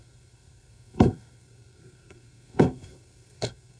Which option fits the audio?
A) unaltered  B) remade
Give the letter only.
B